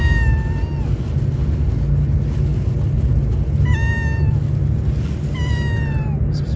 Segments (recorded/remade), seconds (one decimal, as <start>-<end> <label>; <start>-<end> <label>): 0.0-6.6 recorded